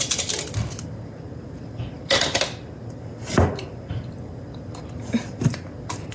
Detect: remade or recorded recorded